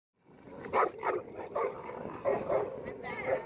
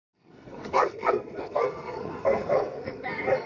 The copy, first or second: second